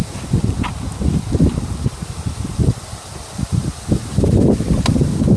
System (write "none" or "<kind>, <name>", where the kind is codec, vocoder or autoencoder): none